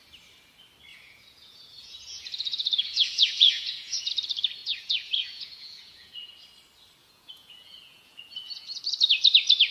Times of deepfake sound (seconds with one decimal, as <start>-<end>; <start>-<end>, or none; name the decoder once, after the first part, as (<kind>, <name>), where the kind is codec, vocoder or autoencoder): 0.9-4.1 (vocoder, Vocos); 4.6-6.3; 7.0-8.8